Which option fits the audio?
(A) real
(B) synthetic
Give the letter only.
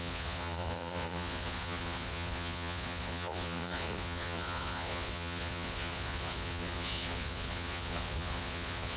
B